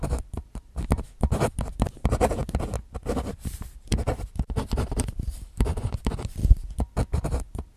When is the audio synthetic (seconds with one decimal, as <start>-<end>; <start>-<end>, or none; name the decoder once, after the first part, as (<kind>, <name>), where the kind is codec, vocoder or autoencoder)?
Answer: 0.0-2.4 (vocoder, BigVGAN v2); 3.3-6.4